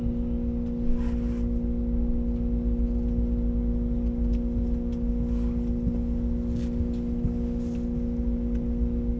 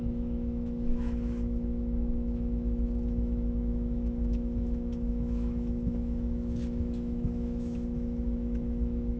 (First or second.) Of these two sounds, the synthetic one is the second